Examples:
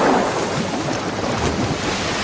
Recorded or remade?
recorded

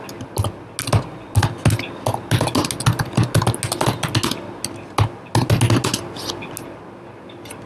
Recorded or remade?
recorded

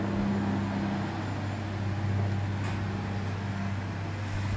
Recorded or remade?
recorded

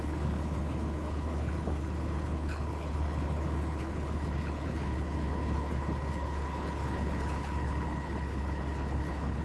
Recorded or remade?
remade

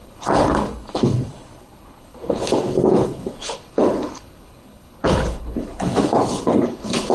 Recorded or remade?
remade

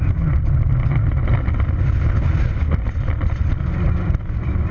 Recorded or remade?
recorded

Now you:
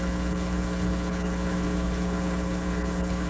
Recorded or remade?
remade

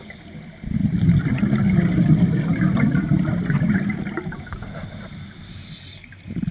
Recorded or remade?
recorded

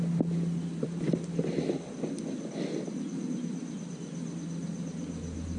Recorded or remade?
recorded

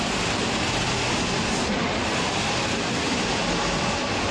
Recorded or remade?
recorded